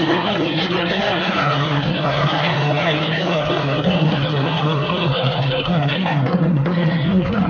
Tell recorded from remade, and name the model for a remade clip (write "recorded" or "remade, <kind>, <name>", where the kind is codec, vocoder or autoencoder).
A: remade, codec, SNAC